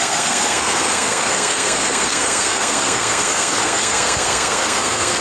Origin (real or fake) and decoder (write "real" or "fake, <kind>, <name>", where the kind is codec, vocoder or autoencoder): fake, codec, SNAC